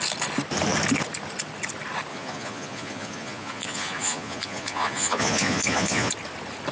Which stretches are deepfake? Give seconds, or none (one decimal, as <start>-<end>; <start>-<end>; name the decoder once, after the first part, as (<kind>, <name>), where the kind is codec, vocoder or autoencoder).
2.1-6.1 (vocoder, Vocos)